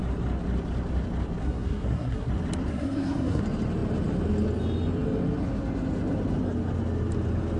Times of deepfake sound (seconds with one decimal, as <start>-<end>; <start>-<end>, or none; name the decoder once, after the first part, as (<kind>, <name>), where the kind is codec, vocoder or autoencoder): 1.4-2.3 (codec, SNAC); 2.7-3.4